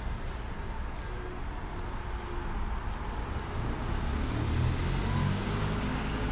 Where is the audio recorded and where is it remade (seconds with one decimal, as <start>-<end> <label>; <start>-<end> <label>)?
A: 0.0-5.2 recorded; 5.2-6.3 remade